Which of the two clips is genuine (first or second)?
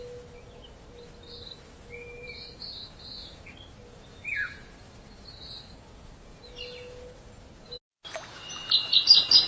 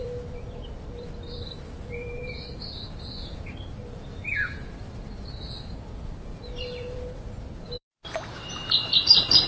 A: first